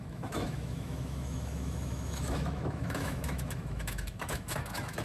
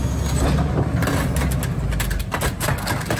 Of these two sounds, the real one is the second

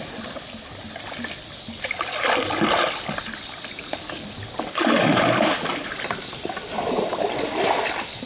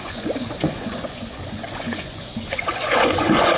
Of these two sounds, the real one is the first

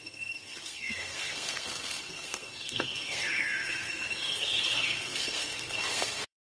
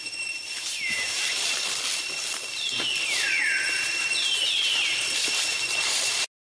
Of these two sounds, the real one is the second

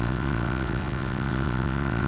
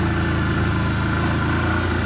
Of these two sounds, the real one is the second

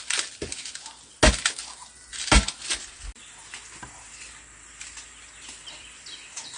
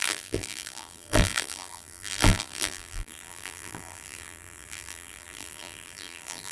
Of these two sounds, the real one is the first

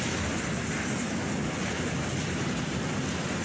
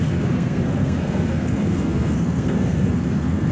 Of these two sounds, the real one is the first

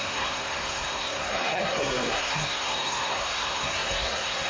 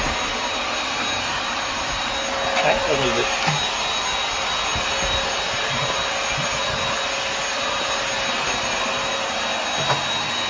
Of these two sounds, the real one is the second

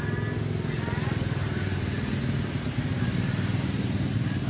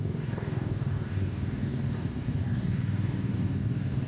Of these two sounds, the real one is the first